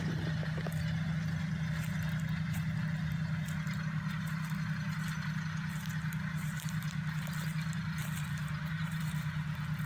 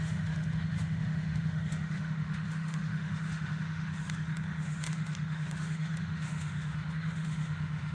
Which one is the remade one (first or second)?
second